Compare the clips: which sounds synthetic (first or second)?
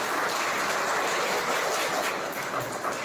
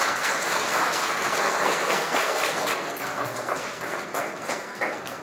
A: second